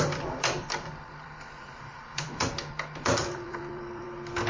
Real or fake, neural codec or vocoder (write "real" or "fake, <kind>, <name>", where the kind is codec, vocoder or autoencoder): fake, vocoder, BigVGAN v2